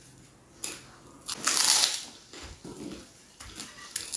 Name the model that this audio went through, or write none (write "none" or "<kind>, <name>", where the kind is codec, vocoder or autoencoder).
none